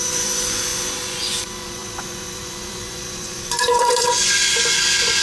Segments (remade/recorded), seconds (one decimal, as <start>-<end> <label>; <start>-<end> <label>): 0.0-5.2 remade